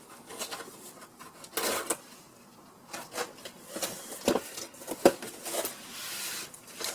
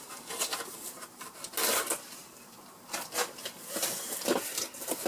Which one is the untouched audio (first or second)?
first